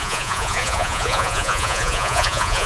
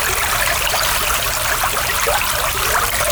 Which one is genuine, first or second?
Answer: second